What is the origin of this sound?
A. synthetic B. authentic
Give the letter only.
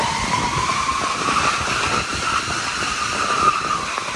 A